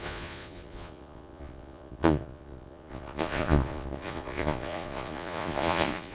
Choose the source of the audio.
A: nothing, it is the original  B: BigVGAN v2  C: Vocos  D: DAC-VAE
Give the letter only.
C